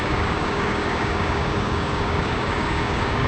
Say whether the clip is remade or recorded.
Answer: remade